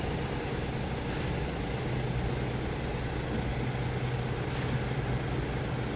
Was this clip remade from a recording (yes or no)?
no